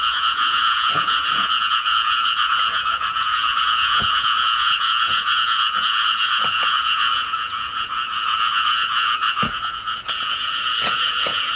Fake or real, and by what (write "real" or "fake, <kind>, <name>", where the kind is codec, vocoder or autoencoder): fake, vocoder, Vocos